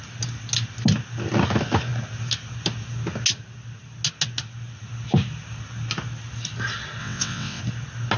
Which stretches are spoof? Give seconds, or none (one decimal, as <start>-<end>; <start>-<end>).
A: 7.0-7.6